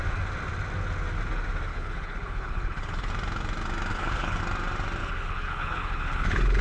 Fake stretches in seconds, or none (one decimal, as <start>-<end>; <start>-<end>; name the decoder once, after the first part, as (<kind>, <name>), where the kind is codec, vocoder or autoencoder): 1.7-3.1 (codec, HILCodec); 3.9-4.4; 5.0-6.6